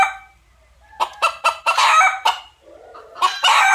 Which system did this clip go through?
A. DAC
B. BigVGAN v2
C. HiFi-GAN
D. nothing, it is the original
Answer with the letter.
B